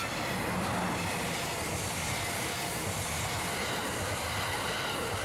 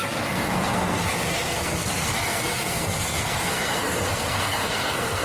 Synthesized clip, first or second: second